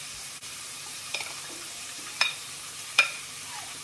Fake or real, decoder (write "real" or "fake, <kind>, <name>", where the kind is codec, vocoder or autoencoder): fake, vocoder, BigVGAN v2